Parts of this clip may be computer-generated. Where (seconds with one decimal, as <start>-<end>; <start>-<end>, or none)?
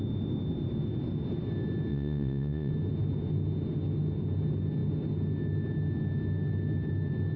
1.9-2.7